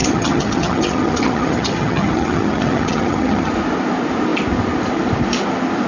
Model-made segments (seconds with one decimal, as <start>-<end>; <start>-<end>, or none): 0.0-3.5